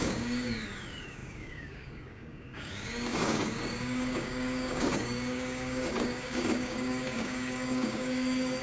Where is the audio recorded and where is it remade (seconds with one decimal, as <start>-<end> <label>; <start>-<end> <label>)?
0.0-8.6 remade